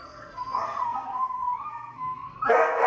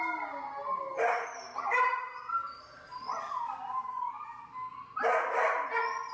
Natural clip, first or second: second